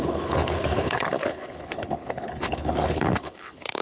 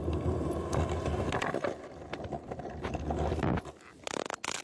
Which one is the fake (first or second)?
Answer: first